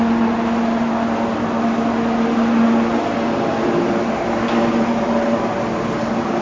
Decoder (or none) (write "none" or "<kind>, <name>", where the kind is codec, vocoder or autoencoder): none